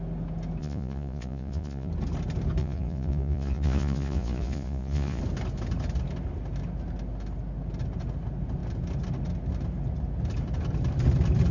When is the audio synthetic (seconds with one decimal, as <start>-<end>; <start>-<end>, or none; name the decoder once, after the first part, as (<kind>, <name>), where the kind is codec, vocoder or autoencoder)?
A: 0.6-1.9 (vocoder, Vocos); 2.6-5.2